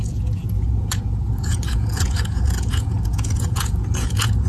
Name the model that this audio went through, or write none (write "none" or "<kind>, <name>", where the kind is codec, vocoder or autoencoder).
vocoder, Vocos